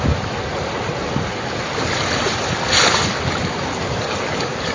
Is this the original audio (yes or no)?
yes